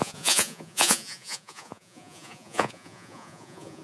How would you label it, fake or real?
fake